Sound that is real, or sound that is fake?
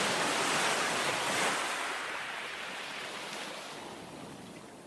real